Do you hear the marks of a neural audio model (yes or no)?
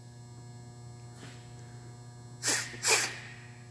no